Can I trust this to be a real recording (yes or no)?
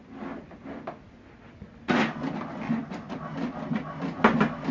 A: yes